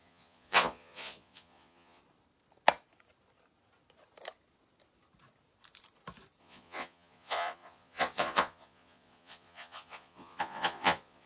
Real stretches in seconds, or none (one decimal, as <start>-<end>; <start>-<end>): 2.0-6.4